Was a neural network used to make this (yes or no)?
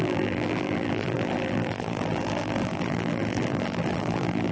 yes